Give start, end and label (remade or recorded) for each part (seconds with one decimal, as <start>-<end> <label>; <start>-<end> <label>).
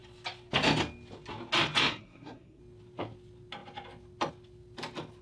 0.0-1.9 recorded; 1.9-2.6 remade; 2.6-5.2 recorded